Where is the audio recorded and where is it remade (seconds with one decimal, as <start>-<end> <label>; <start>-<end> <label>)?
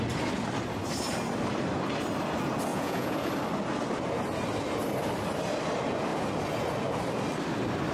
0.0-2.7 recorded; 2.7-3.3 remade; 3.3-7.9 recorded